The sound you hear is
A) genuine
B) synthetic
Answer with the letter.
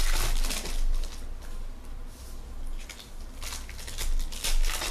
A